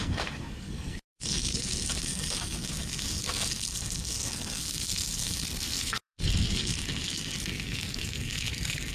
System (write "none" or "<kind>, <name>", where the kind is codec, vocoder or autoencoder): codec, SNAC